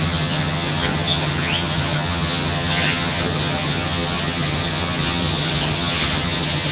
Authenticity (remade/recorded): remade